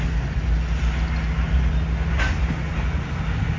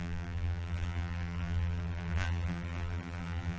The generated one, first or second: second